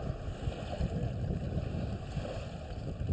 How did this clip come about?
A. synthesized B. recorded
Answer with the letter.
B